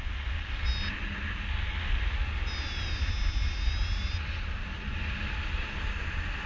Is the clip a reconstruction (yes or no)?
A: no